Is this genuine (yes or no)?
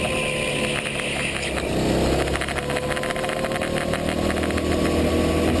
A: yes